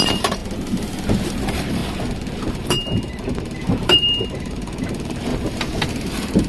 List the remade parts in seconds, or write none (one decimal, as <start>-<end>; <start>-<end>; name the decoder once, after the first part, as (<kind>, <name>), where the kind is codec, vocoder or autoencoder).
0.0-0.4 (vocoder, BigVGAN v2); 1.3-1.8; 2.5-5.3; 5.9-6.5